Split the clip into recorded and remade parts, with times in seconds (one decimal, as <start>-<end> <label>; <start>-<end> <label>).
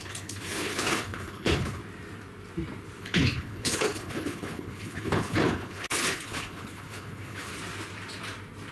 0.0-1.8 remade; 1.8-3.0 recorded; 3.0-7.5 remade; 7.5-8.7 recorded